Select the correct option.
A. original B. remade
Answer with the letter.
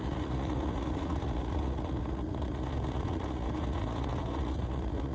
B